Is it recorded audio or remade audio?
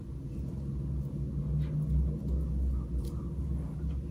recorded